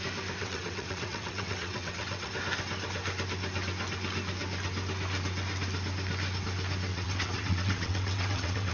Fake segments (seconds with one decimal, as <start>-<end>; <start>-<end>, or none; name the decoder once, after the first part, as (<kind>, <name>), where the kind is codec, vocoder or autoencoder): 0.4-2.3 (vocoder, WaveNeXt); 6.9-8.7